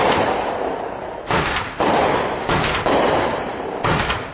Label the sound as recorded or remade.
remade